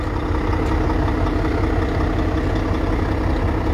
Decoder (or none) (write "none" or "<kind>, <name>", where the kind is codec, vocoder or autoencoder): none